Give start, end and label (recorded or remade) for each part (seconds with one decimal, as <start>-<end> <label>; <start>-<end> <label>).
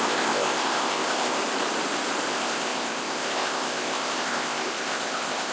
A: 0.0-1.4 remade; 1.4-2.3 recorded; 2.3-5.5 remade